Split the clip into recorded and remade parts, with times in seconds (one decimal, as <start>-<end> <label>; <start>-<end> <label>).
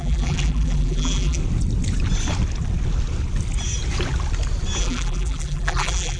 0.0-1.4 remade; 1.4-4.8 recorded; 4.8-6.2 remade